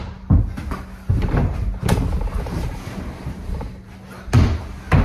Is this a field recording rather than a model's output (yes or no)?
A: yes